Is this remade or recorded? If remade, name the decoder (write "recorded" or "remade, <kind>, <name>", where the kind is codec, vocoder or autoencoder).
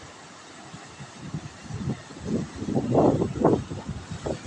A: recorded